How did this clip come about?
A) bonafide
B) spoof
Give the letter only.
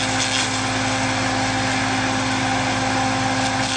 A